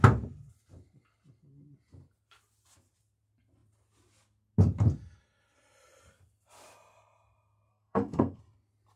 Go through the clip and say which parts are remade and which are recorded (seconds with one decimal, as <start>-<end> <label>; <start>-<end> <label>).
0.0-7.7 recorded; 7.7-8.4 remade; 8.4-9.0 recorded